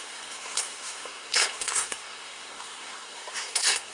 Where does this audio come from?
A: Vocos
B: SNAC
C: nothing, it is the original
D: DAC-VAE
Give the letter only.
B